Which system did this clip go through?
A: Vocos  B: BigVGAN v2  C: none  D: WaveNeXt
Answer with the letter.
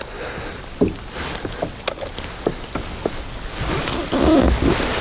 C